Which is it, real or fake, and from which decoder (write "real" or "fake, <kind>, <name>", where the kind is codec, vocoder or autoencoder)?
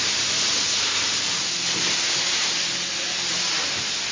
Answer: real